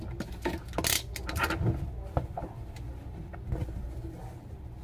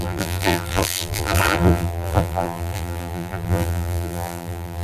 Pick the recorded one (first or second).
first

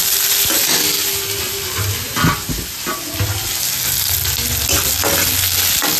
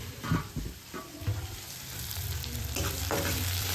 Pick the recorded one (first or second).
first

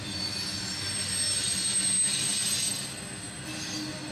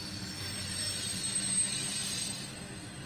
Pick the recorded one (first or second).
first